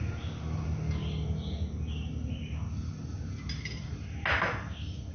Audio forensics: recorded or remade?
recorded